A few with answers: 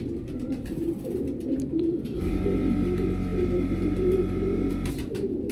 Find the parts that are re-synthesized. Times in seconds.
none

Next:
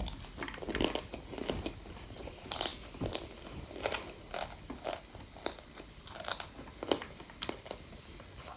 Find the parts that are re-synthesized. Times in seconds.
none

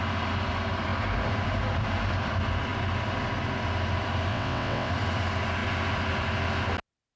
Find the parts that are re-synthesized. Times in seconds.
4.3-4.9 (vocoder, WaveNeXt)

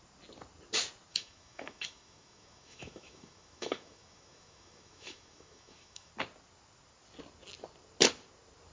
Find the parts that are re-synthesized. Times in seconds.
1.1-6.1 (autoencoder, DAC-VAE)

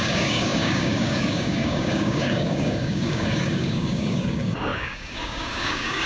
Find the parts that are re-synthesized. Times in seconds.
0.0-6.1 (codec, DAC)